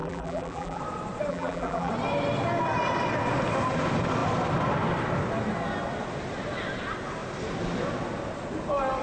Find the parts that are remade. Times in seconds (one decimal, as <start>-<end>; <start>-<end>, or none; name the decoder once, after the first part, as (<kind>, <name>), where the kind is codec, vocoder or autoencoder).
0.0-0.8 (vocoder, BigVGAN v2); 1.3-1.9